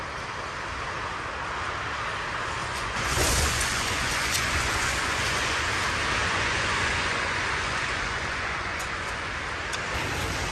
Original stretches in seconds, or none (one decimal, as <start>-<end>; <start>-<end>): 0.0-2.6; 5.7-6.2; 9.3-10.5